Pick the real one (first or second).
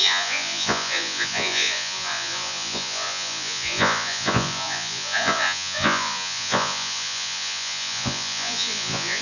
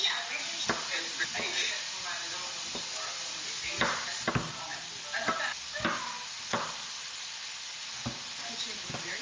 second